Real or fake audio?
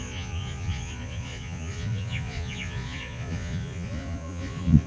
fake